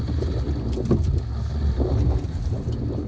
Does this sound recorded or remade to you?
recorded